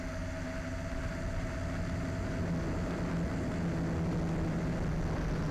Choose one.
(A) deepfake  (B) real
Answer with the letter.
B